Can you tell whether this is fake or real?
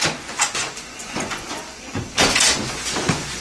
fake